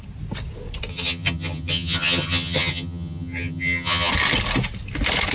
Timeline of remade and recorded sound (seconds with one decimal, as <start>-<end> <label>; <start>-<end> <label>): 0.0-0.9 recorded; 0.9-4.1 remade; 4.1-5.3 recorded